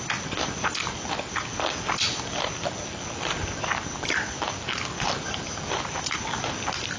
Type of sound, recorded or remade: recorded